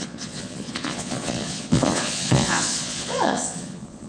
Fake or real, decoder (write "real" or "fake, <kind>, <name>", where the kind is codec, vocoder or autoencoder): fake, vocoder, Vocos